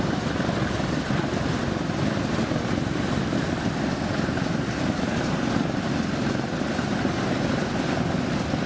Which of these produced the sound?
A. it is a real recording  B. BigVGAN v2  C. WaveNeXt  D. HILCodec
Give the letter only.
A